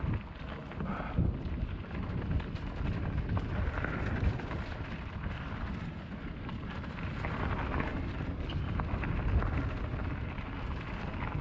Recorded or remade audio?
recorded